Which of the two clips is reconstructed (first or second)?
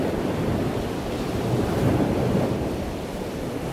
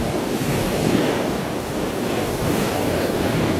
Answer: second